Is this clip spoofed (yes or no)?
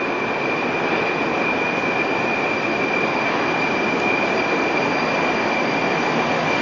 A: no